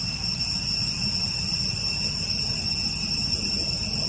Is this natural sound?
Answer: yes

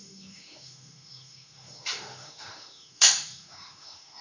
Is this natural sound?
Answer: no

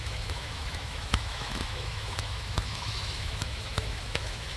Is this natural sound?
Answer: no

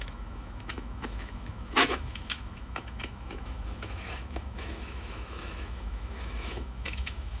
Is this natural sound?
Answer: no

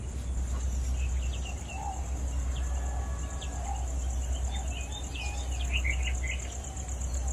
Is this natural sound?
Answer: yes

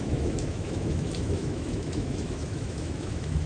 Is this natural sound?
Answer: no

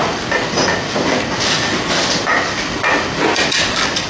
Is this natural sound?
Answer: yes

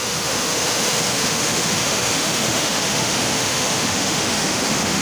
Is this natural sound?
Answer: no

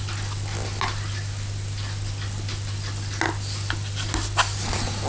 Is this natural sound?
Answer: yes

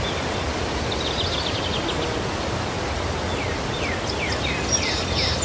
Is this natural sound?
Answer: yes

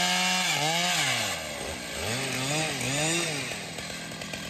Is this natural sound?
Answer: yes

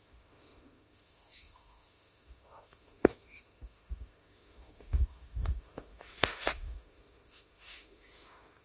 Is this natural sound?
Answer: no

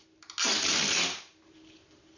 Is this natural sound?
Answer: yes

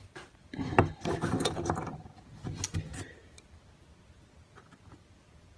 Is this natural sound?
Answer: yes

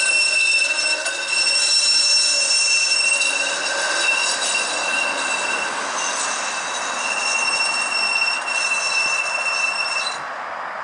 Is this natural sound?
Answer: yes